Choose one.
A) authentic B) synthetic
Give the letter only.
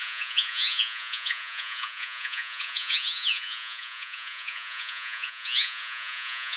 B